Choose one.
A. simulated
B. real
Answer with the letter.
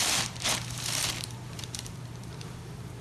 A